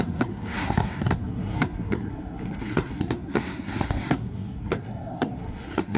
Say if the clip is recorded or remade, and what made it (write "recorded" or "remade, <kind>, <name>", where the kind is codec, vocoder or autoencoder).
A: remade, codec, SNAC